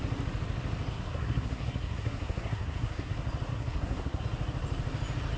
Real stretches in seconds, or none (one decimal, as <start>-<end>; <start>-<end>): 0.0-0.9; 3.1-3.5; 4.2-5.4